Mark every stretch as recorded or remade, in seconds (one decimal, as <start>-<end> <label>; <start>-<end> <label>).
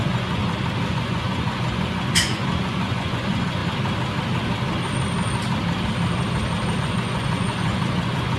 0.0-0.4 remade; 0.4-0.9 recorded; 0.9-3.6 remade; 3.6-6.8 recorded; 6.8-8.4 remade